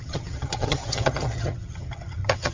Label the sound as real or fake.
fake